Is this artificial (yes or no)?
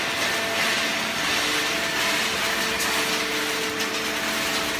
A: no